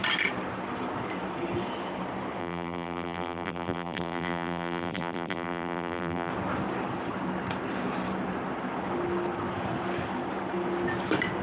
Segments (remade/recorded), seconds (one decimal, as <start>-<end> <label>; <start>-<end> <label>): 0.0-2.4 recorded; 2.4-6.3 remade; 6.3-11.4 recorded